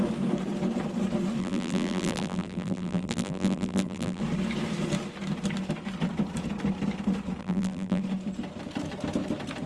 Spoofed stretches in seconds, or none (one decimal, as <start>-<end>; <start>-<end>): 1.4-4.2; 7.4-8.0